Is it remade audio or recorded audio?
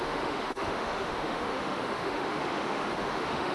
remade